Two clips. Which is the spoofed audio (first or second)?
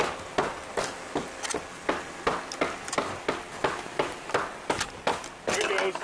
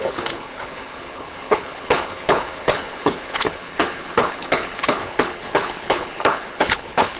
second